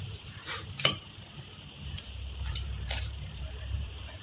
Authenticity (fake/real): fake